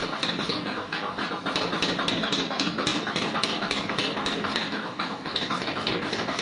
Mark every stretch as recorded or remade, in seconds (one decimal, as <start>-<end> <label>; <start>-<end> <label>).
0.0-1.2 remade; 1.2-2.1 recorded; 2.1-6.4 remade